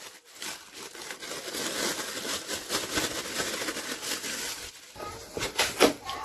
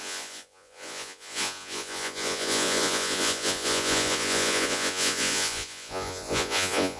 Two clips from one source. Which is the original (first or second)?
first